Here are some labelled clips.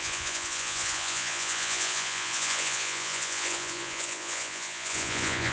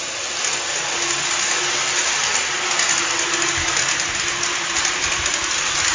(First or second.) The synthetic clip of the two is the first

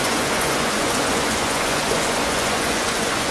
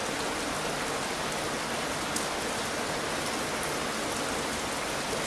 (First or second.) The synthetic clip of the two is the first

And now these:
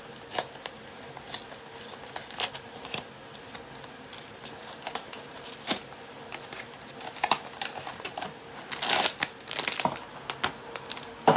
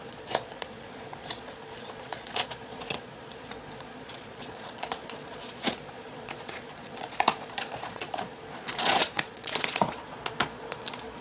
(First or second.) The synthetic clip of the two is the second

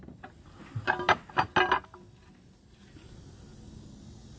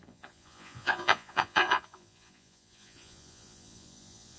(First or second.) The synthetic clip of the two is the second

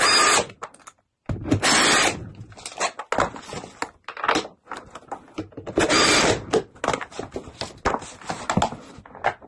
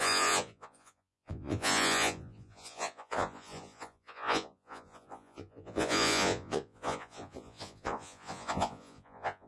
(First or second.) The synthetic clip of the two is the second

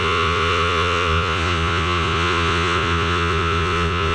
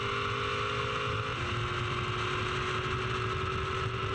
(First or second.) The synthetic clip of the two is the first